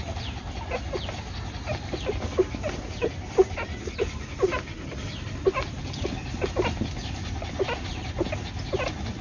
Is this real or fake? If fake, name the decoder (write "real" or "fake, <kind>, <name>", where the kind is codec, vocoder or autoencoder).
real